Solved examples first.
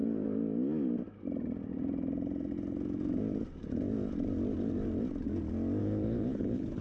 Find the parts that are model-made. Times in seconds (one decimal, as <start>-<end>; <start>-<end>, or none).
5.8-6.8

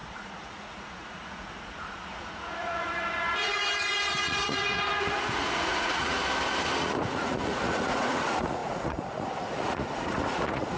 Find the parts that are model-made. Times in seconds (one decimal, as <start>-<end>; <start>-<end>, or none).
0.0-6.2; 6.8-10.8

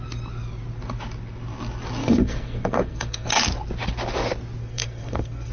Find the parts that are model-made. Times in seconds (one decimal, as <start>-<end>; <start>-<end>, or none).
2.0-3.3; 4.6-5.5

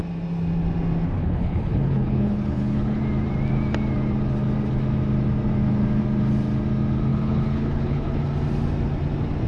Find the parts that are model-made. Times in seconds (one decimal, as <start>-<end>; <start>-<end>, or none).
1.2-3.0; 7.1-8.2

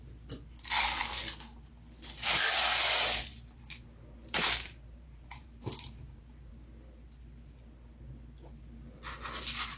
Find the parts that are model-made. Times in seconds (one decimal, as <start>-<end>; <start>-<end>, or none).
3.3-6.5